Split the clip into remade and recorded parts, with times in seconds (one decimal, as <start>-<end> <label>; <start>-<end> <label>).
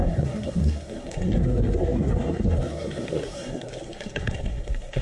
0.0-5.0 remade